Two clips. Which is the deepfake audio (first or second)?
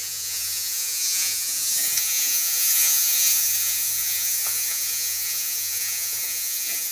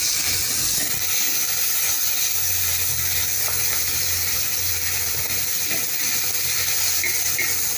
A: first